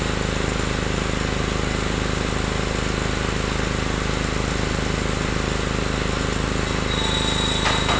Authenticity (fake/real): real